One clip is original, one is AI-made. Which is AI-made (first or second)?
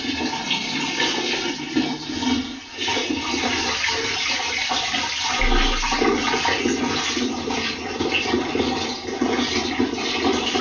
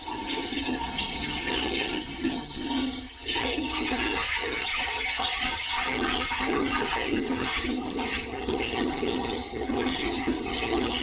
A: second